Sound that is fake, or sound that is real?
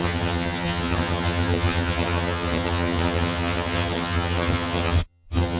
fake